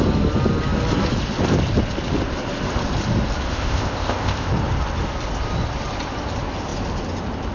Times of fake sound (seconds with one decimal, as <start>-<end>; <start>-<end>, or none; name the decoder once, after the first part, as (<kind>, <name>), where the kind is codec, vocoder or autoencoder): 3.5-4.5 (codec, ZipCodec)